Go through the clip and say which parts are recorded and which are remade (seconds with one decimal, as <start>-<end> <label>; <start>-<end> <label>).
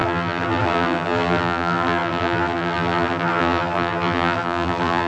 0.0-5.1 remade